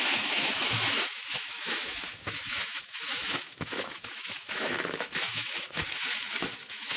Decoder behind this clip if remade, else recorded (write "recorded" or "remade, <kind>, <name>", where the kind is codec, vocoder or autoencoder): remade, autoencoder, DAC-VAE